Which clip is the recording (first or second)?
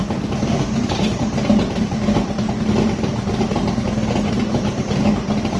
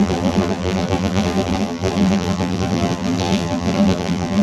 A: first